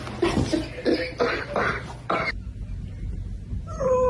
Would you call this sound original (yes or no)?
yes